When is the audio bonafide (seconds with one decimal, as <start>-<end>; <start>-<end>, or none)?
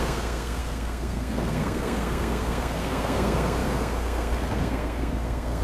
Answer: none